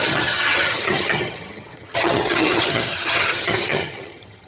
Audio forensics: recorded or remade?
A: remade